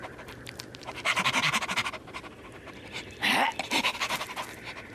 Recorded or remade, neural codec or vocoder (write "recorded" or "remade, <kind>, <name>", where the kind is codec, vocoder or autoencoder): recorded